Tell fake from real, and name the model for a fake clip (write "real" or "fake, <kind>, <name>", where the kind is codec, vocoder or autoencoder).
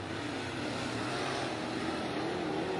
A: real